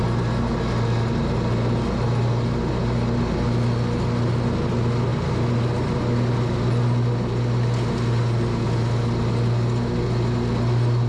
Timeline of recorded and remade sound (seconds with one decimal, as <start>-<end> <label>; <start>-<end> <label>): 0.0-11.1 recorded